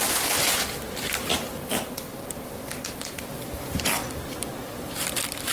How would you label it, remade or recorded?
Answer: recorded